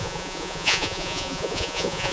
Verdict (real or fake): fake